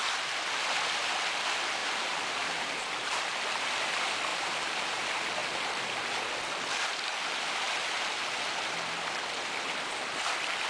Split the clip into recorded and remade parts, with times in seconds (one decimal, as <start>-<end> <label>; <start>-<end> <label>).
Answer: 0.0-1.8 recorded; 1.8-3.2 remade; 3.2-4.3 recorded; 4.3-5.0 remade; 5.0-10.7 recorded